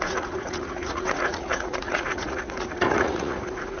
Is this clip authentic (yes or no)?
no